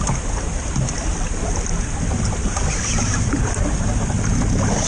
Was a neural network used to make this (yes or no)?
no